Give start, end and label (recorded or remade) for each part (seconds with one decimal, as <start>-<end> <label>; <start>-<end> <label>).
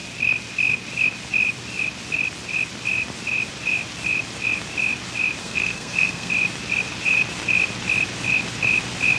0.0-5.4 recorded; 5.4-6.3 remade; 6.3-9.2 recorded